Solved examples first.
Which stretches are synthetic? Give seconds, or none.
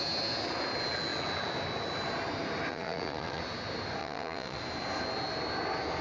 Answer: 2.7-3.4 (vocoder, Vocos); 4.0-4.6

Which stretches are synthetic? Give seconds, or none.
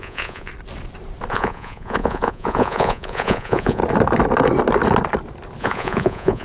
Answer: 0.0-0.5 (vocoder, Vocos); 1.3-3.8; 5.6-6.4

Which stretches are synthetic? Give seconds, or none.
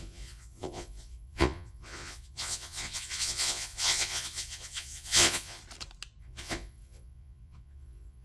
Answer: 0.0-5.6 (vocoder, Vocos); 6.2-8.2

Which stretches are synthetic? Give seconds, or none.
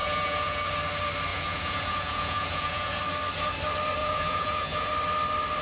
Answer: 0.0-0.7 (vocoder, Vocos); 1.3-3.0; 4.0-4.9